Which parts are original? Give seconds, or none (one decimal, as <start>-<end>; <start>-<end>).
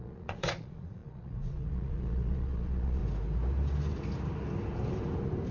3.0-5.5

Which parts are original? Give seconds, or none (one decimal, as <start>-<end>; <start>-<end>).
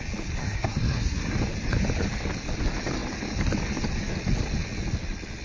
0.0-0.4; 1.3-5.4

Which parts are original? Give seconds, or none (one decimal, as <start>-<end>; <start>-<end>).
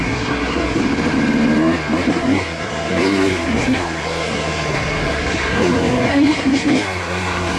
0.8-2.1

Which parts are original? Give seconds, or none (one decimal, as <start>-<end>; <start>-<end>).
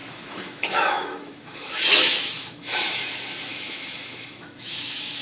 3.1-3.5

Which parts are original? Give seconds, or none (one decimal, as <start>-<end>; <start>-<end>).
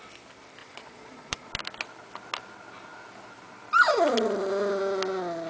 0.0-0.6; 1.5-5.5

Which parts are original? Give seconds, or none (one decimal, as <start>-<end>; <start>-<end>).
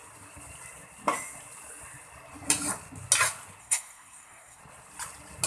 0.0-3.6; 4.6-5.5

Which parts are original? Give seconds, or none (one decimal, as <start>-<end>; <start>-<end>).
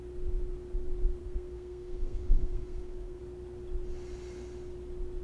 0.0-1.2; 3.2-5.2